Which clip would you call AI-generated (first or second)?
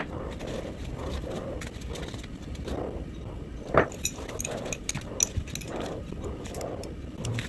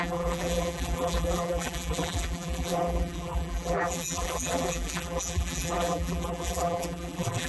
second